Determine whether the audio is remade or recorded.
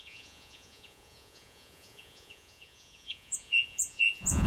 remade